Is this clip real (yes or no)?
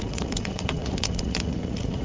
no